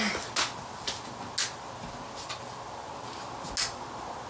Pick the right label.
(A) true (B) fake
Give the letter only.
A